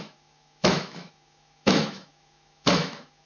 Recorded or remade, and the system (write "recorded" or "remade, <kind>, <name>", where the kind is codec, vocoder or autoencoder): remade, autoencoder, DAC-VAE